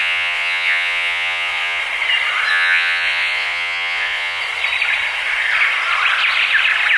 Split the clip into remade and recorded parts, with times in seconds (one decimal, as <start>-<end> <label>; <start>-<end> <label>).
0.0-1.8 remade; 1.8-2.5 recorded; 2.5-4.4 remade; 4.4-7.0 recorded

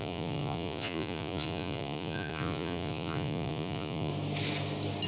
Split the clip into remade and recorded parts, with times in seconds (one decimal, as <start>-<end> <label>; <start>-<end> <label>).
0.0-4.1 remade; 4.1-5.1 recorded